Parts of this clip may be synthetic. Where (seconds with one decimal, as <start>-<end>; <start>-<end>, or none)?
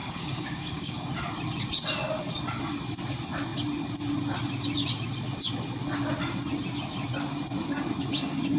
0.0-1.2